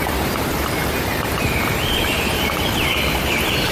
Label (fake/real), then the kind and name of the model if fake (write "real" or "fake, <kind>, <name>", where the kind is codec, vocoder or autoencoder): fake, vocoder, BigVGAN v2